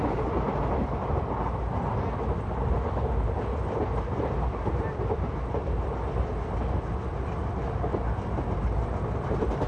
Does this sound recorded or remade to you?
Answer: recorded